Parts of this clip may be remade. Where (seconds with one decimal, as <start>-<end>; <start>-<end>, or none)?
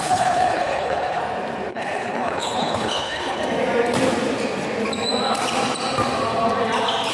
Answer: 0.0-1.2; 1.7-3.4